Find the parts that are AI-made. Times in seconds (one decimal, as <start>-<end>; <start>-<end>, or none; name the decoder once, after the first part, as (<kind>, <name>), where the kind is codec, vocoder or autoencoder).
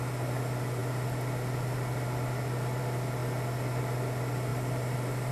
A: 4.5-5.3 (vocoder, BigVGAN v2)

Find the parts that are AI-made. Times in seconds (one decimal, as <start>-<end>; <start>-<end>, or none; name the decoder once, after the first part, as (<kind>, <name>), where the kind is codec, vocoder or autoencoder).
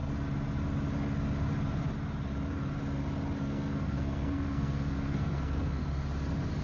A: 3.4-5.8 (codec, SNAC)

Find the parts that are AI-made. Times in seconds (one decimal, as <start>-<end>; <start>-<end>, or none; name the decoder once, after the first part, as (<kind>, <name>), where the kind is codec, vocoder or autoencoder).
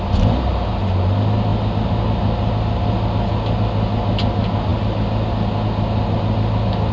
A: none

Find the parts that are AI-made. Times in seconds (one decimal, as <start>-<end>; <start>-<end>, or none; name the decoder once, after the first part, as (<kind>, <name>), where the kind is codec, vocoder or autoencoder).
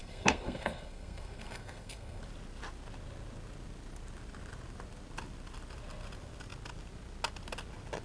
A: 0.0-2.2 (codec, SNAC)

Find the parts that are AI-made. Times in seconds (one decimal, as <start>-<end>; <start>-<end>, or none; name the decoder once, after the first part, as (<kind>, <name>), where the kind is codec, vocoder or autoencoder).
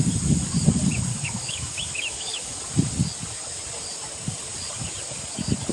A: 1.1-2.6 (autoencoder, DAC-VAE)